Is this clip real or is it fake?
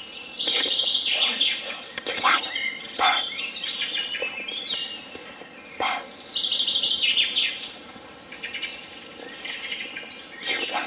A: real